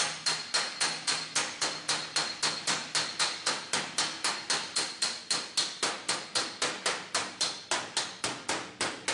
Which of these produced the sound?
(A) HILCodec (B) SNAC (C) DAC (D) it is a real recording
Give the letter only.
D